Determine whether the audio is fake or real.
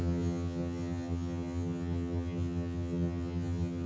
fake